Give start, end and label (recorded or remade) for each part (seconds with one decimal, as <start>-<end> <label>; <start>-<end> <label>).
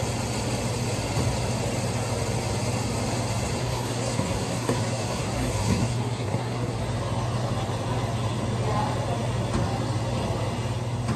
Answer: 0.0-3.6 recorded; 3.6-6.8 remade; 6.8-11.2 recorded